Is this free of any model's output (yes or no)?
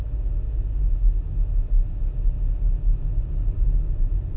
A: yes